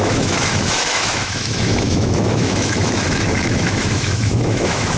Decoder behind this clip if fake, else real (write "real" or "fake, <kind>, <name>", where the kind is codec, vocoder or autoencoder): fake, autoencoder, DAC-VAE